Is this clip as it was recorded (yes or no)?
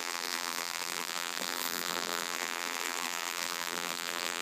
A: no